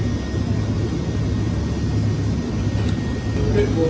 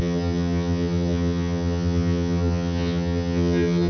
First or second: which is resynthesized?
second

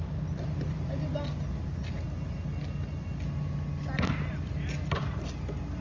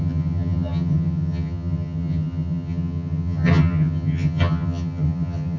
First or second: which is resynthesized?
second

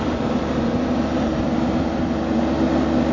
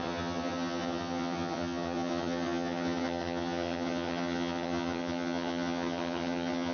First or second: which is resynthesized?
second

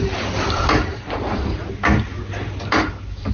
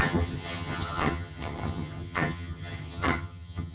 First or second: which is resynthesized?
second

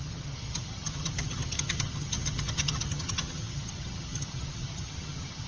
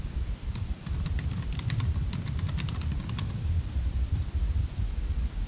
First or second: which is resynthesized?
first